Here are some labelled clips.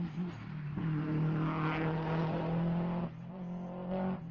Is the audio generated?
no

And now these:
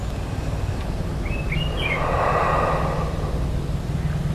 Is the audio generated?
no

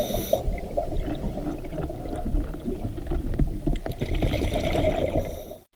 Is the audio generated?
yes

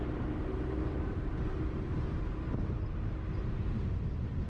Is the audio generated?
no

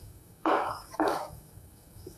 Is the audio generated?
yes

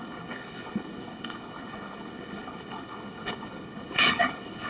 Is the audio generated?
yes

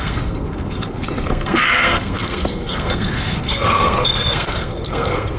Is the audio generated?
yes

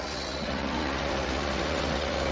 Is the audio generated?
yes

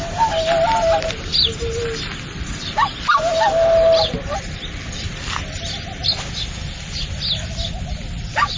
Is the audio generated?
no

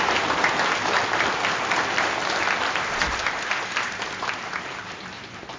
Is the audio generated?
no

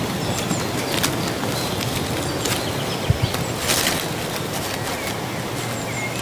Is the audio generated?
no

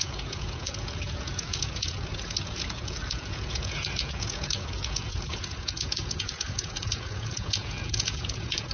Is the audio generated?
yes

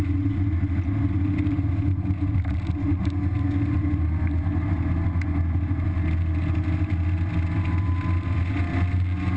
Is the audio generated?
no